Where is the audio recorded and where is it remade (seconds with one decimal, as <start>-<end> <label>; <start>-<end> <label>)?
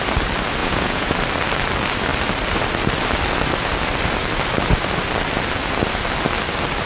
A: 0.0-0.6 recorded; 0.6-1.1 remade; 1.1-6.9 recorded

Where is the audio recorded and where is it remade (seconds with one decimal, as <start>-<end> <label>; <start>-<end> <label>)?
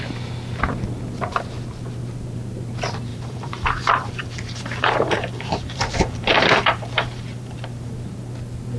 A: 0.0-3.1 recorded; 3.1-7.9 remade; 7.9-8.8 recorded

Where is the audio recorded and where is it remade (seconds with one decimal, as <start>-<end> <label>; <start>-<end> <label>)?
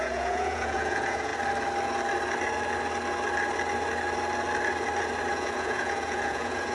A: 0.0-1.3 remade; 1.3-5.3 recorded; 5.3-6.7 remade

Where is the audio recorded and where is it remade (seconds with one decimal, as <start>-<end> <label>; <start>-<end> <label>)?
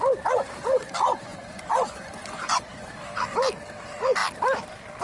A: 0.0-1.3 recorded; 1.3-2.9 remade; 2.9-5.0 recorded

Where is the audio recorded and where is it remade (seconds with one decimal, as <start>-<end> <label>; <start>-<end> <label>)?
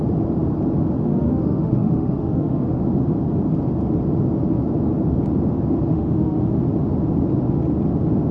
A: 0.0-1.1 recorded; 1.1-2.8 remade; 2.8-5.9 recorded; 5.9-6.6 remade; 6.6-8.3 recorded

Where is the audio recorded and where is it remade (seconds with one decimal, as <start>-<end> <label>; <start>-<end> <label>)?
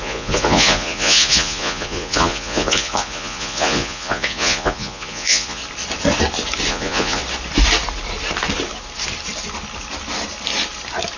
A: 0.0-5.6 remade; 5.6-6.7 recorded; 6.7-7.2 remade; 7.2-11.2 recorded